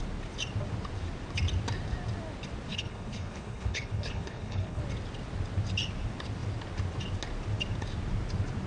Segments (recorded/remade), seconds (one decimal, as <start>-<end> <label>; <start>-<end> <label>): 0.0-2.7 recorded; 2.7-4.8 remade; 4.8-8.7 recorded